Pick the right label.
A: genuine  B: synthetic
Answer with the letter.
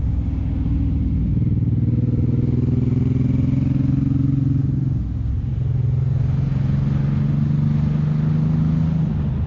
A